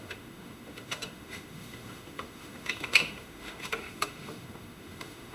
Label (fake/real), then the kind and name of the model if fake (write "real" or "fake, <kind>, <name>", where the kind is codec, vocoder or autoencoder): fake, autoencoder, DAC-VAE